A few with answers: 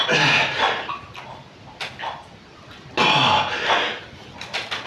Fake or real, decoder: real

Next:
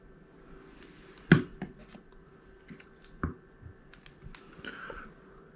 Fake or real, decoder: real